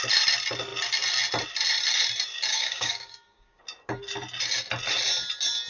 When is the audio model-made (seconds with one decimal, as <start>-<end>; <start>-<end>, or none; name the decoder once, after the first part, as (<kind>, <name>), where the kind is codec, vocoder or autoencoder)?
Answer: 2.5-3.6 (codec, DAC)